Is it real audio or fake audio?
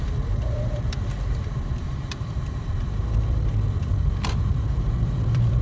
fake